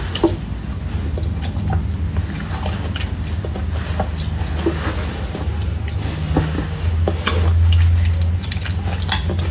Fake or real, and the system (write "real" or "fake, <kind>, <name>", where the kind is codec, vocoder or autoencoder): real